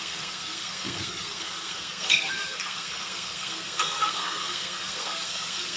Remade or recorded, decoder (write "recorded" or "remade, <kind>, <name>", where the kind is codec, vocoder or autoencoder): remade, codec, SNAC